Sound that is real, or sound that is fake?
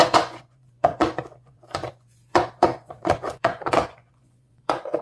fake